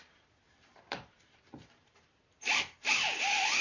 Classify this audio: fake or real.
fake